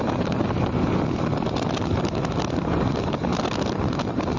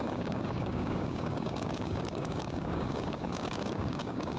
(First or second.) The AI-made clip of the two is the second